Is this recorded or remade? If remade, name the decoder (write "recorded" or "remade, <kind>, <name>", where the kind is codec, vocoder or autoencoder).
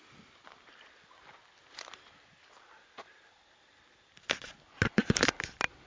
recorded